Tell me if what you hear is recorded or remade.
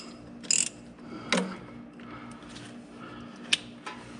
recorded